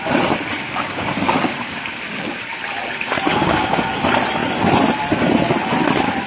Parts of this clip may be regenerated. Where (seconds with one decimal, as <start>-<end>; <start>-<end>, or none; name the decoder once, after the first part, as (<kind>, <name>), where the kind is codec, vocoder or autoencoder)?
0.6-2.4 (codec, DAC); 3.3-4.0